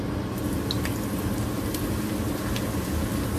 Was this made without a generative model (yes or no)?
yes